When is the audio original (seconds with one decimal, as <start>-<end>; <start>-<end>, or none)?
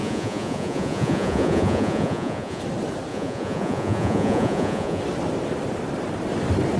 2.6-3.1; 5.0-6.8